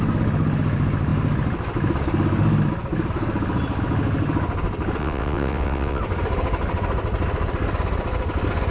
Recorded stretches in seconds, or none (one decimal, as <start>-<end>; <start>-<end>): 0.0-5.0; 6.0-8.7

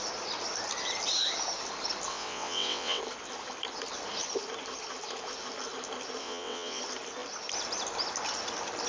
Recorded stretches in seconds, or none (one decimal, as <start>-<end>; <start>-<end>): 0.0-2.1; 3.0-6.2; 6.8-8.9

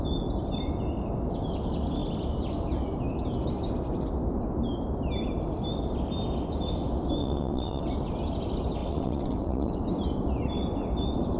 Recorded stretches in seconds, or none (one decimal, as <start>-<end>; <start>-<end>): 0.0-7.2; 7.8-8.8; 9.7-11.4

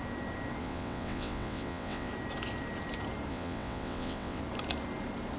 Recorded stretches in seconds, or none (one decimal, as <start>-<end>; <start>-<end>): 0.0-0.6; 2.1-3.3; 4.4-5.4

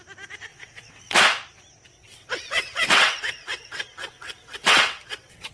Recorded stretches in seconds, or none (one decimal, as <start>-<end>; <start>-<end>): 0.0-0.5; 1.2-1.9

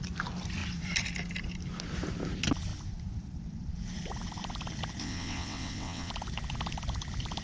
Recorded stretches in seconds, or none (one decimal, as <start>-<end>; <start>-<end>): 0.0-5.0; 6.1-7.4

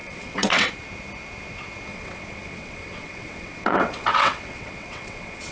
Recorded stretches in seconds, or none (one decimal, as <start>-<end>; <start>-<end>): 0.7-1.9

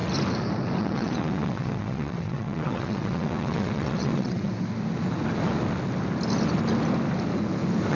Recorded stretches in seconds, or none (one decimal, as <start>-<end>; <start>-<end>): 0.0-0.8; 4.5-7.9